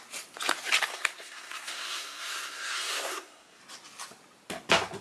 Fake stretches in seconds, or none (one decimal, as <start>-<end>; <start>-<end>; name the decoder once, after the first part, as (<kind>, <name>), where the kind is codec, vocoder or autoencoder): 0.9-3.6 (codec, SNAC)